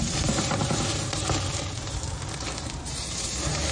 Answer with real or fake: fake